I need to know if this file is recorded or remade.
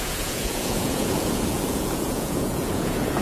remade